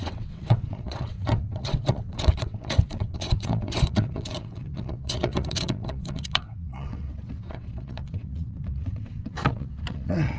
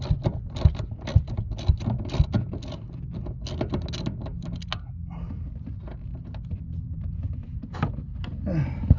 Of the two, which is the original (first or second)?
second